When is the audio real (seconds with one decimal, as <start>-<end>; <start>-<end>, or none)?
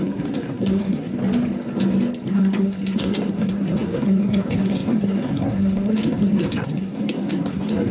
1.1-2.3